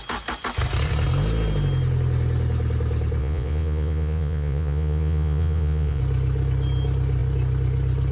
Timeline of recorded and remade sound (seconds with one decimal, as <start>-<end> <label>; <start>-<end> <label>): 0.0-3.2 recorded; 3.2-6.0 remade; 6.0-8.1 recorded